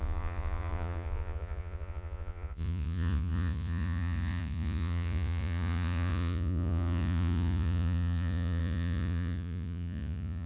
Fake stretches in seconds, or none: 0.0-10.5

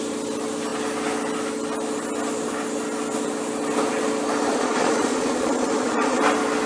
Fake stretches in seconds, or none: 4.5-6.2